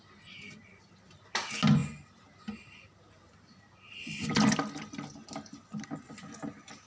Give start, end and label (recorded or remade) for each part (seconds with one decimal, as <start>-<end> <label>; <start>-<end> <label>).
0.0-6.9 recorded